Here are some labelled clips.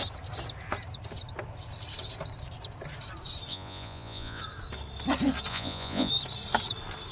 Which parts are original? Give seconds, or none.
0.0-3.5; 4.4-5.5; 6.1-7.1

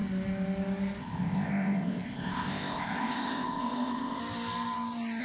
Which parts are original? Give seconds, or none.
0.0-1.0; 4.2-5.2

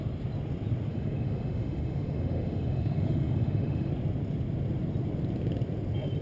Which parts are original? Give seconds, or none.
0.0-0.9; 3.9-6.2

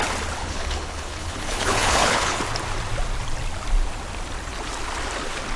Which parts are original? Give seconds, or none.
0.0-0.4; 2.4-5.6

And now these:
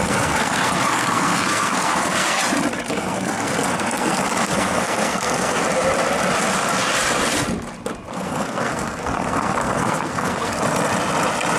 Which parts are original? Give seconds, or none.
2.4-2.9; 5.6-8.1; 10.5-11.6

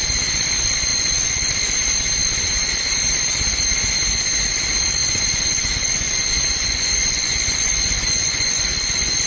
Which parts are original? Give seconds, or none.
0.0-0.9; 1.5-5.0